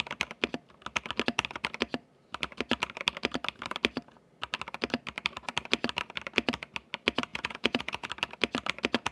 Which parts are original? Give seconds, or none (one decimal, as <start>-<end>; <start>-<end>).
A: 0.0-7.3; 8.1-9.1